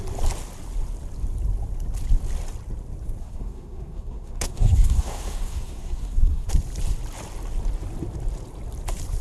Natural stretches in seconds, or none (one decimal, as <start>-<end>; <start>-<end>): 0.0-3.2; 6.5-9.2